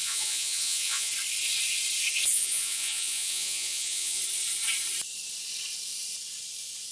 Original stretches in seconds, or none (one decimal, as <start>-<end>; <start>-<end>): 1.1-2.3; 4.2-6.9